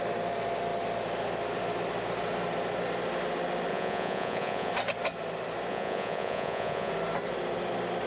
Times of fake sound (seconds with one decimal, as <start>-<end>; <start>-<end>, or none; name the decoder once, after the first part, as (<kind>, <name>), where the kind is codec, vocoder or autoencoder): 3.7-4.7 (vocoder, Vocos); 5.7-6.9

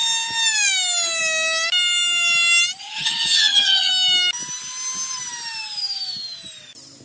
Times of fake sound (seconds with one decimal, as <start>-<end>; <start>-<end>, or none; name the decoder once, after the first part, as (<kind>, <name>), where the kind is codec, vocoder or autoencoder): 2.8-3.9 (vocoder, HiFi-GAN)

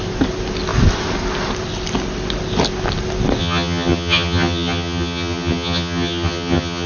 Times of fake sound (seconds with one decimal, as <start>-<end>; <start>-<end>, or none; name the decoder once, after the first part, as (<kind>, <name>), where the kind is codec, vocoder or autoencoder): 3.4-6.9 (vocoder, HiFi-GAN)

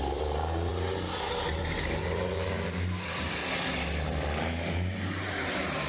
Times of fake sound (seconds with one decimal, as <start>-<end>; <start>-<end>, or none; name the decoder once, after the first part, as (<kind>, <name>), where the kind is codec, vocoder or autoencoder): 0.0-0.7 (vocoder, BigVGAN v2); 1.6-3.4; 4.4-5.9

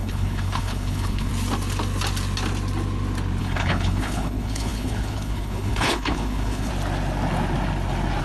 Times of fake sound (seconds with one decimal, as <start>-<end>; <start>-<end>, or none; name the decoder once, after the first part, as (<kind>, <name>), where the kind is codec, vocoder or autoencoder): 0.0-1.3 (codec, HILCodec); 3.4-6.7

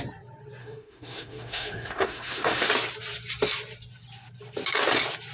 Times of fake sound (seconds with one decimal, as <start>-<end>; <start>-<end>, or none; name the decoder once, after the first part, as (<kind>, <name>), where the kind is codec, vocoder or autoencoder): 0.6-2.7 (autoencoder, DAC-VAE)

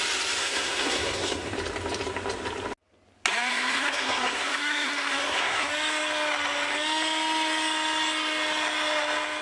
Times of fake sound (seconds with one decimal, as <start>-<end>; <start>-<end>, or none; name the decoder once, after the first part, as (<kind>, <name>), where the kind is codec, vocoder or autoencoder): 0.4-1.5 (codec, SNAC); 3.5-5.7

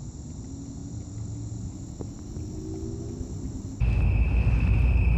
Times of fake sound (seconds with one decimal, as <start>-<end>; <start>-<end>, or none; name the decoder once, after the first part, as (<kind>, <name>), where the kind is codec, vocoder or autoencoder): none